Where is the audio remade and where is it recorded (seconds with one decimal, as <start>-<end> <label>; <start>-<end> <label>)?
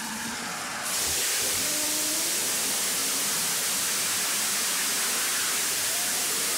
0.0-0.7 recorded; 0.7-2.6 remade; 2.6-5.3 recorded; 5.3-6.1 remade; 6.1-6.6 recorded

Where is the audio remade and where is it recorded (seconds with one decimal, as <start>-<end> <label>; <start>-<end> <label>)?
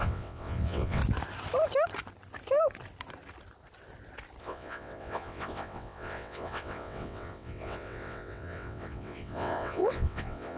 0.0-1.0 remade; 1.0-4.4 recorded; 4.4-10.6 remade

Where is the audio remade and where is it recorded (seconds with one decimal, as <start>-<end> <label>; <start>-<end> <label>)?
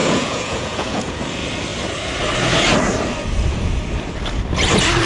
0.0-1.2 remade; 1.2-5.0 recorded